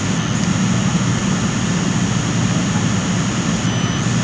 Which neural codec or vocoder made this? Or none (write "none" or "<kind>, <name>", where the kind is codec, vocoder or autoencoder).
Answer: none